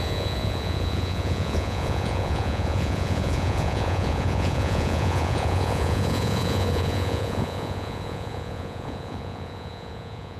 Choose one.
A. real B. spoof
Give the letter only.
B